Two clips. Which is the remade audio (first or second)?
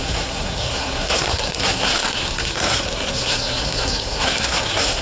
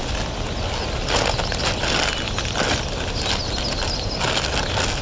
first